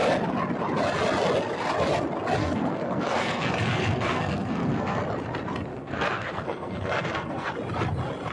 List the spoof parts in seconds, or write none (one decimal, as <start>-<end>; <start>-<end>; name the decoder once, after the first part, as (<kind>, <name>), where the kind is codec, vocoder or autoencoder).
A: 2.4-5.0 (codec, SNAC); 5.7-7.5